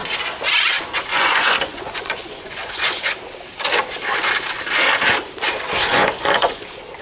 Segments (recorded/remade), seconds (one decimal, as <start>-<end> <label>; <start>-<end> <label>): 0.0-1.1 recorded; 1.1-3.2 remade; 3.2-5.9 recorded; 5.9-6.6 remade; 6.6-7.0 recorded